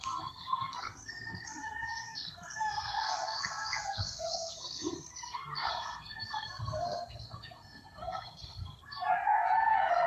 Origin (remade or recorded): remade